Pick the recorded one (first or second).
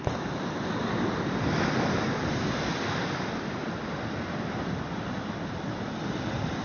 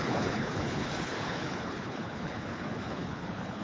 first